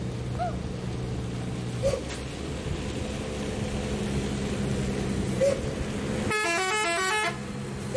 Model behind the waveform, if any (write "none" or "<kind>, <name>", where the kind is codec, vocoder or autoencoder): none